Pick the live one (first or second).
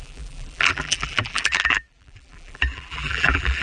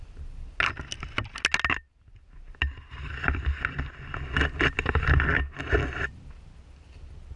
second